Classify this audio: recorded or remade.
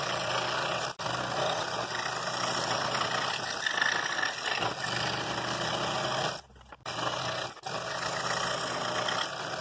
recorded